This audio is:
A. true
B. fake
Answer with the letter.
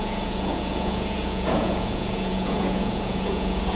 B